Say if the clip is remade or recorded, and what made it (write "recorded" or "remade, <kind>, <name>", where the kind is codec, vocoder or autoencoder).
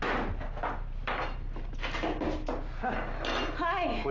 recorded